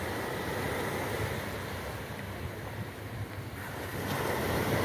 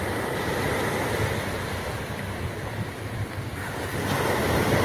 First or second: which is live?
first